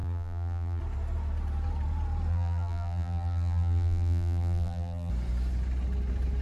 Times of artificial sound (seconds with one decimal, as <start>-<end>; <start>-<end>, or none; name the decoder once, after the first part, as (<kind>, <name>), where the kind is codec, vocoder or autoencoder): 0.0-0.8 (vocoder, BigVGAN v2); 2.3-5.1